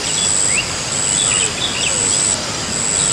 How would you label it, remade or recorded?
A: recorded